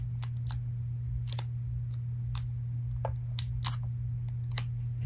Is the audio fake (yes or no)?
no